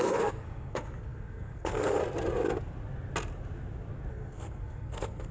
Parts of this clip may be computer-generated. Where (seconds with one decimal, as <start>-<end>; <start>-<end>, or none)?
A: 0.0-2.0; 4.1-5.3